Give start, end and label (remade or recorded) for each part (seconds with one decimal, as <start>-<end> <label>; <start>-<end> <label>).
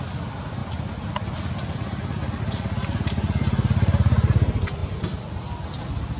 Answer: 0.0-6.2 recorded